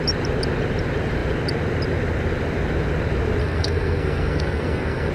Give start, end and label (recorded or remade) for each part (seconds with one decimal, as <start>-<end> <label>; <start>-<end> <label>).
0.0-3.4 recorded; 3.4-5.1 remade